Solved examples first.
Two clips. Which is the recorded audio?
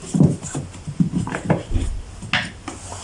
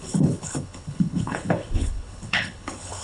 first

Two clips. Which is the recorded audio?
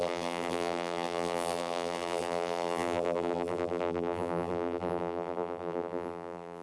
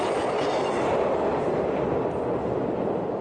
second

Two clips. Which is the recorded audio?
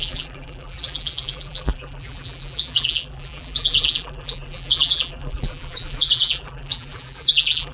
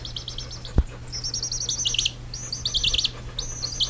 second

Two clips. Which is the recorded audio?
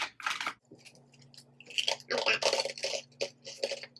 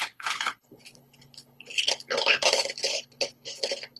first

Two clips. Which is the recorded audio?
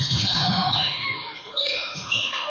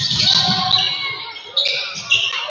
second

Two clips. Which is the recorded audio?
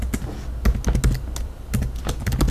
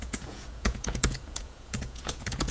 first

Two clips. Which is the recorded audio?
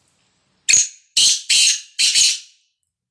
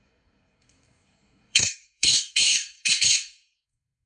first